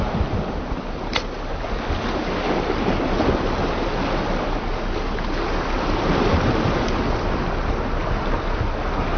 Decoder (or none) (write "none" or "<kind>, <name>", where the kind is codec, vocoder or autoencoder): none